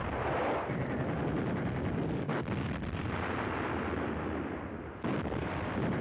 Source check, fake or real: real